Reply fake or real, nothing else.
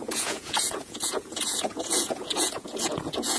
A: fake